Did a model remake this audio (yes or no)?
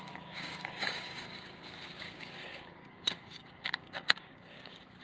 yes